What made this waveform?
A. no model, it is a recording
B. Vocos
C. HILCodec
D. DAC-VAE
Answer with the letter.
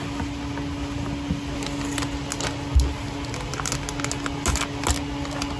A